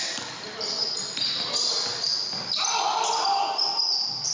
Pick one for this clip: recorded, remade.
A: recorded